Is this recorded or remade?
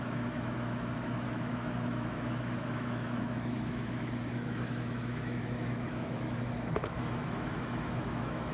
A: remade